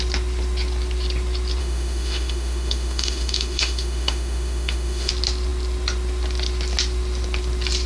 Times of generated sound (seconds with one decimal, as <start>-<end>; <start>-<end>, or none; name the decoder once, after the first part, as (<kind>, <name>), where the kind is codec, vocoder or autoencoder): 1.6-5.1 (autoencoder, DAC-VAE)